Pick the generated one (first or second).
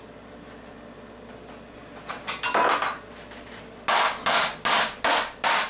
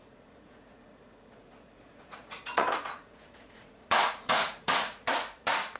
second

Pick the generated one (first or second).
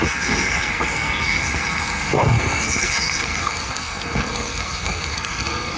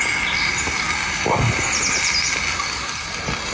first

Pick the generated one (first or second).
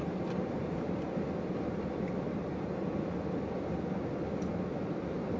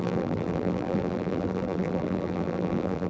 second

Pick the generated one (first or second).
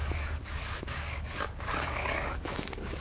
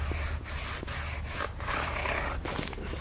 first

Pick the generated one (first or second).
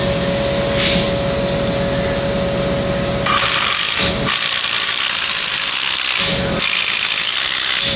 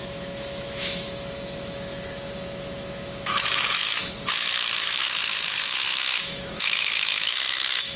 second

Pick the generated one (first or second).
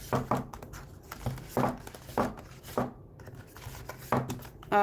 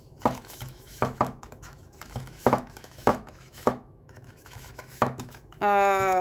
second